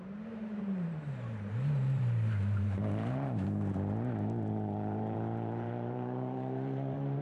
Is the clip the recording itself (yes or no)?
no